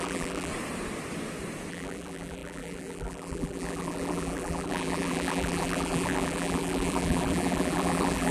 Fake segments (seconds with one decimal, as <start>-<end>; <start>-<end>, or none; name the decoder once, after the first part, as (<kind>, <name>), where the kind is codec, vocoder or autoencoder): 0.0-0.5 (vocoder, BigVGAN v2); 1.7-8.3